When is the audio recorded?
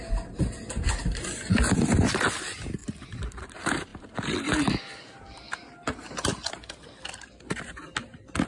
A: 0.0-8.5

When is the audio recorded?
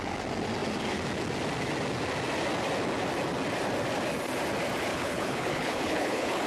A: 0.0-4.9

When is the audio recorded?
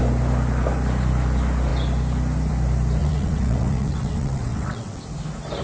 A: 0.0-3.0; 5.0-5.6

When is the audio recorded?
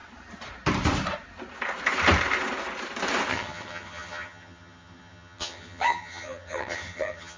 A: 0.0-3.3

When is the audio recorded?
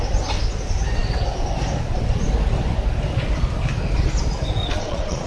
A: 0.0-4.6